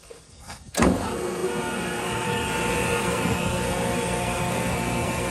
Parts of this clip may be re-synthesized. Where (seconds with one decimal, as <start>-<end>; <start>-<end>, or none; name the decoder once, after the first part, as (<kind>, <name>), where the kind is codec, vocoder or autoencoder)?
0.0-2.5 (codec, SNAC); 3.0-5.3

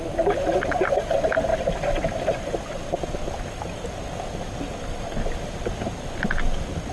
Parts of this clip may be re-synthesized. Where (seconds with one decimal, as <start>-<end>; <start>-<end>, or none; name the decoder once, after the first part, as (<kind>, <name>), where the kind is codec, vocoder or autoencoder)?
none

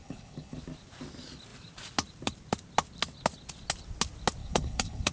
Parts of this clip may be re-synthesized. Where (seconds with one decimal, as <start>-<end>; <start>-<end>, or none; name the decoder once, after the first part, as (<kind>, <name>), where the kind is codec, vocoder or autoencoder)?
0.0-0.6 (codec, HILCodec); 4.4-5.1

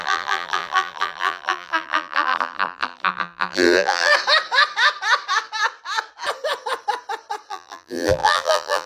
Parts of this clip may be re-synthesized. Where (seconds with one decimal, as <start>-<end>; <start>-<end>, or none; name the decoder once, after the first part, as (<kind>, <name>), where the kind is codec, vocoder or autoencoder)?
0.0-4.1 (vocoder, BigVGAN v2); 7.5-8.9

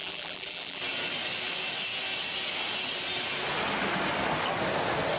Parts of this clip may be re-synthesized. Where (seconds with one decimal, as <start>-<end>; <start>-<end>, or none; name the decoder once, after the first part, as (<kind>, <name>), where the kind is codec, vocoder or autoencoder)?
0.0-0.8 (vocoder, BigVGAN v2)

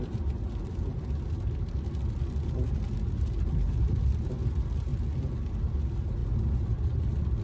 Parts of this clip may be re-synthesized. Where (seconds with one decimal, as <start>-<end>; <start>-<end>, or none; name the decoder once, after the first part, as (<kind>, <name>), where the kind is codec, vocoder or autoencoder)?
none

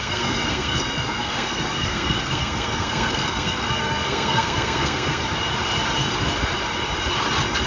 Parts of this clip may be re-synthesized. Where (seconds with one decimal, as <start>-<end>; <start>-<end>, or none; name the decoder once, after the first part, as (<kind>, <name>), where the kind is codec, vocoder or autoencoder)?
0.0-5.2 (codec, SNAC)